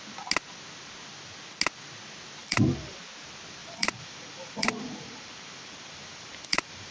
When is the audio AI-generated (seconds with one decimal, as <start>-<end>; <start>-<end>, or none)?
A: 2.4-3.0; 3.6-6.9